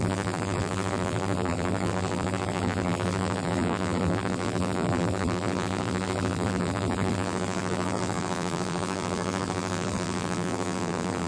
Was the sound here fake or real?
fake